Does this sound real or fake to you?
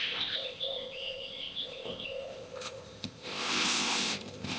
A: fake